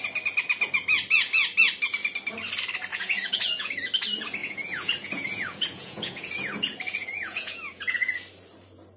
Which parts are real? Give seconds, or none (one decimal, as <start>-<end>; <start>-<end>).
0.0-2.9; 3.7-4.4; 8.2-9.0